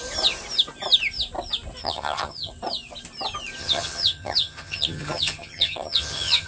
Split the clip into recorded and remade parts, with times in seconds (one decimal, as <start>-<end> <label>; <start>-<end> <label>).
0.0-1.8 recorded; 1.8-2.5 remade; 2.5-3.6 recorded; 3.6-6.5 remade